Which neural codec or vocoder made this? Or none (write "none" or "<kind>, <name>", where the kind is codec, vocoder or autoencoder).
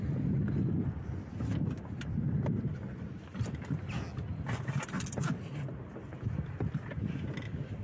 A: none